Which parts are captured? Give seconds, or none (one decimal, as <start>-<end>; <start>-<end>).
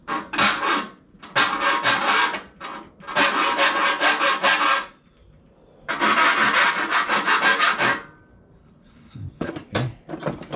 0.0-8.6; 9.5-10.6